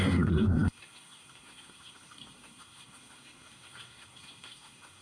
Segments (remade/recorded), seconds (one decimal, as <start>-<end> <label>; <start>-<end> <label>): 0.0-5.0 remade